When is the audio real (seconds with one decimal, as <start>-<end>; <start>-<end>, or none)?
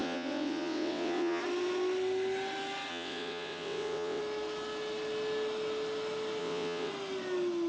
1.4-2.9; 4.2-6.4; 6.9-7.7